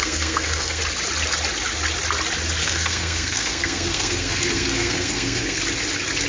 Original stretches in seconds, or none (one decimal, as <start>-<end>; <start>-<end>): 0.8-2.6; 5.6-6.3